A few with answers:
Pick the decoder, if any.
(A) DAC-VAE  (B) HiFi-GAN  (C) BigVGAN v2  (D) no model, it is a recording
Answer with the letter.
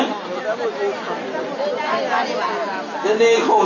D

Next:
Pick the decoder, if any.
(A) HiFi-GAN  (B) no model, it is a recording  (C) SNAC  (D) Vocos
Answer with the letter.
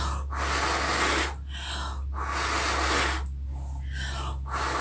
B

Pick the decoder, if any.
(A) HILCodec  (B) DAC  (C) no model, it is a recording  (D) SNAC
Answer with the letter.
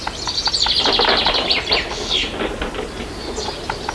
C